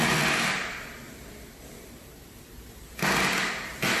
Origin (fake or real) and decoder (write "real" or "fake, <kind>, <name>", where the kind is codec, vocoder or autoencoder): real